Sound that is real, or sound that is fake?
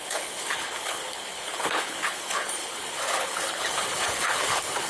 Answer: fake